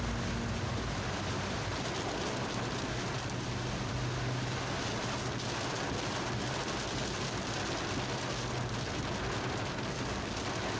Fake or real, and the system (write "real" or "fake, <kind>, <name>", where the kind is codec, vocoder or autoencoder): real